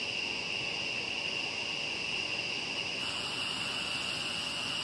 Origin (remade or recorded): remade